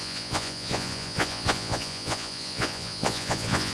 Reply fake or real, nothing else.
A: fake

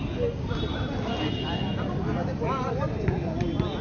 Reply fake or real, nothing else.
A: real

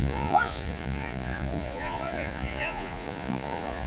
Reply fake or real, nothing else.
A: fake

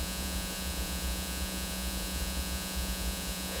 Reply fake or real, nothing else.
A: fake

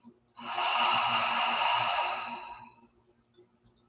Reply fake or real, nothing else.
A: real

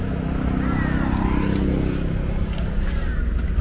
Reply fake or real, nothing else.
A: real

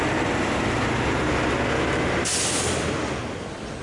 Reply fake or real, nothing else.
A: real